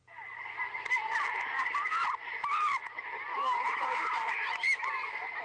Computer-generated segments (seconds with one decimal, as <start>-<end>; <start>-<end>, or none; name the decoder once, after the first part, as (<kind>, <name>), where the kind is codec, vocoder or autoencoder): 3.3-4.1 (autoencoder, DAC-VAE)